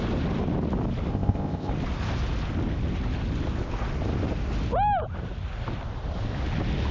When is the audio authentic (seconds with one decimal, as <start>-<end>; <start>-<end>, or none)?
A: 0.0-1.1; 1.7-6.9